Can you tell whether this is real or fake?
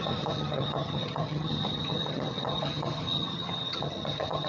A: fake